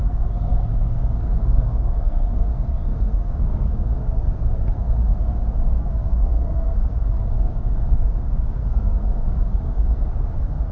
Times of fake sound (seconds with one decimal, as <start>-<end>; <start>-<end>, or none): 0.0-5.1; 5.8-10.7